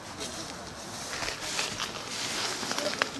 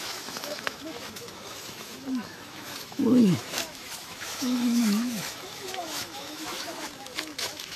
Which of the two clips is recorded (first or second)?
first